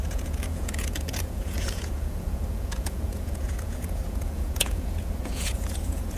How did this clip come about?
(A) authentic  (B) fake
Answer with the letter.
B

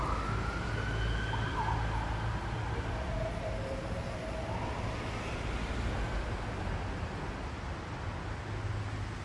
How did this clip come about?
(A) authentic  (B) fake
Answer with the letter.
A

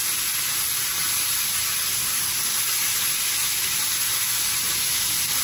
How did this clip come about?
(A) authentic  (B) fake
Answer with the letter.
A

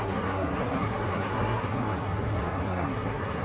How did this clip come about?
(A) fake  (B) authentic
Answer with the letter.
A